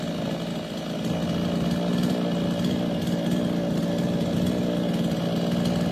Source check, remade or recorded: recorded